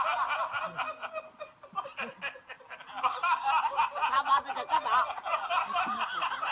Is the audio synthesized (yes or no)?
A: no